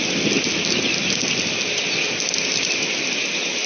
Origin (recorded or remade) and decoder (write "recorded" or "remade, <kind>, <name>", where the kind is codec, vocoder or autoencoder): recorded